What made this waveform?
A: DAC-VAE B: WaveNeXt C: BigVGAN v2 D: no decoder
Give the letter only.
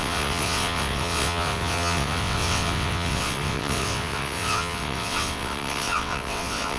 B